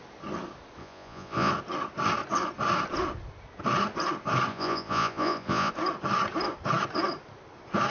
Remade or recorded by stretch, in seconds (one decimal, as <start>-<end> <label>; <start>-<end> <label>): 0.0-0.8 recorded; 0.8-1.5 remade; 1.5-4.5 recorded; 4.5-5.7 remade; 5.7-7.9 recorded